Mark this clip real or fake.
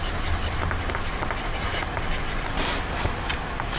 real